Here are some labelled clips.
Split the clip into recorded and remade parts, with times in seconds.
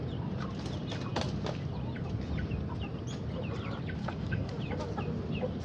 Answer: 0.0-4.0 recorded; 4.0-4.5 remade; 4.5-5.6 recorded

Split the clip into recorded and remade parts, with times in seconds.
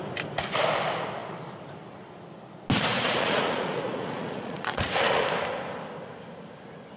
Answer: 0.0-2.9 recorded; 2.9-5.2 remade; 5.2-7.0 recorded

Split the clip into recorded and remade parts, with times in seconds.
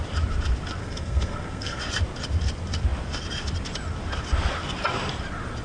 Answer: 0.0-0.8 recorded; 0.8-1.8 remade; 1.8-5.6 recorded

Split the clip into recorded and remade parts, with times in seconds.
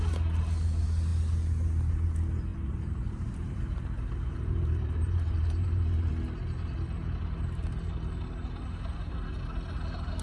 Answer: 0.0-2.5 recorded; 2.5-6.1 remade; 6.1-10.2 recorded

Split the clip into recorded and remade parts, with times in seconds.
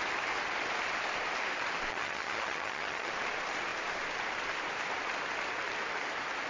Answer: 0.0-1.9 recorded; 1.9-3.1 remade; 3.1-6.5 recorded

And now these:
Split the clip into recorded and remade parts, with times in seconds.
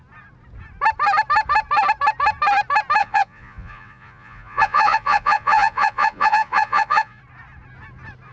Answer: 0.0-3.0 recorded; 3.0-7.2 remade; 7.2-8.3 recorded